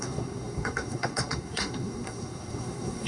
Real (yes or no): no